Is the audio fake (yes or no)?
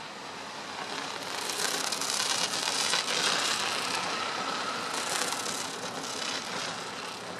no